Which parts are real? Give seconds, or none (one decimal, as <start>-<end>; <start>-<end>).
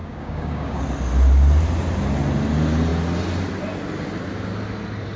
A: 0.8-5.2